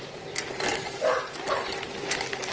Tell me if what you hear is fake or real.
real